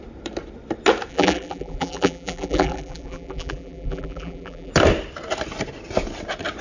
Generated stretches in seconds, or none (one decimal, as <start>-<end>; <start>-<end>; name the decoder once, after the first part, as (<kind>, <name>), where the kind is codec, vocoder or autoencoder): 1.1-4.7 (vocoder, BigVGAN v2)